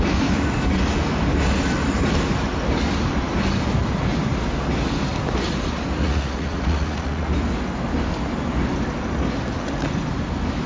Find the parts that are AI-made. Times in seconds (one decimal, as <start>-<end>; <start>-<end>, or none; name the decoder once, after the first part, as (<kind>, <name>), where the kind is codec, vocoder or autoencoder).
6.0-7.3 (vocoder, Vocos)